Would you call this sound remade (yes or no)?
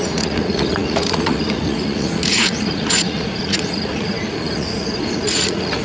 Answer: yes